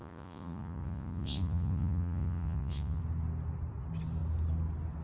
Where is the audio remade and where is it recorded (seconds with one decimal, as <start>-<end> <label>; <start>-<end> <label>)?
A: 0.0-3.0 remade; 3.0-5.0 recorded